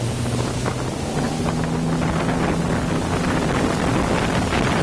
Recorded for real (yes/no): yes